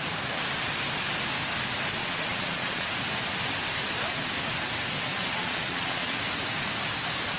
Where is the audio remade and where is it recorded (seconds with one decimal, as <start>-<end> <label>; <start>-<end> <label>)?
0.0-2.0 recorded; 2.0-2.9 remade; 2.9-5.1 recorded; 5.1-6.2 remade; 6.2-7.4 recorded